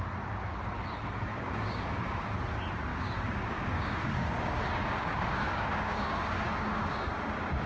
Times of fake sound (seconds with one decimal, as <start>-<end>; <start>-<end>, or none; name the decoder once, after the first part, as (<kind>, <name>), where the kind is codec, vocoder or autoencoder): 1.3-2.3 (codec, DAC); 2.9-7.7